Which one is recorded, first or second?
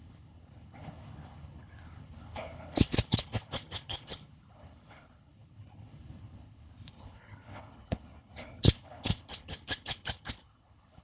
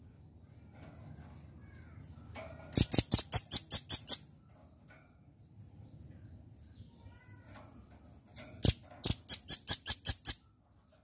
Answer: second